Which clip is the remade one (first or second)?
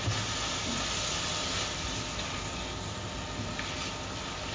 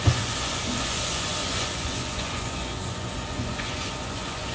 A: second